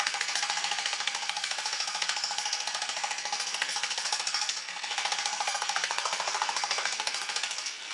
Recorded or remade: remade